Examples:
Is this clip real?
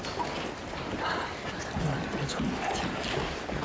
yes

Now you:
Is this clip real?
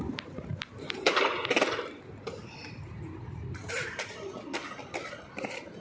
yes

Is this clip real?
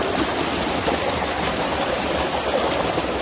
no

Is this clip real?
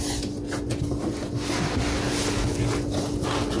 yes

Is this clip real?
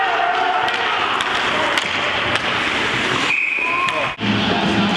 yes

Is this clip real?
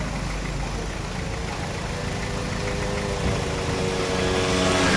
yes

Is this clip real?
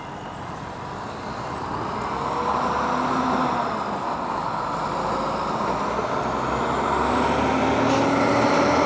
yes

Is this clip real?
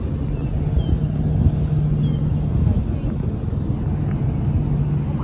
yes